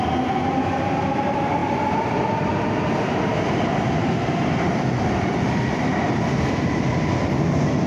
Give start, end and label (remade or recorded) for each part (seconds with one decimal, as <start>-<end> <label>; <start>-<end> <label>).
0.0-1.6 recorded; 1.6-2.5 remade; 2.5-3.3 recorded; 3.3-6.0 remade; 6.0-7.9 recorded